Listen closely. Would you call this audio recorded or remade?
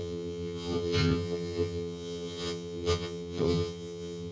remade